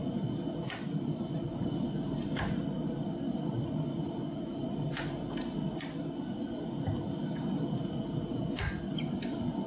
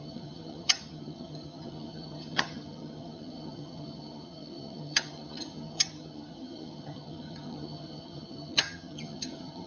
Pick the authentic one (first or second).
first